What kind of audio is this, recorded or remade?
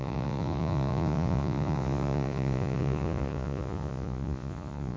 remade